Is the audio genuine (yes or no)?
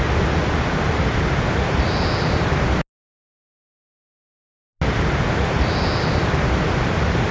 yes